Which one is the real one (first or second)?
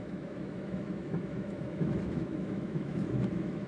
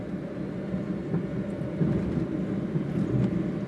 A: second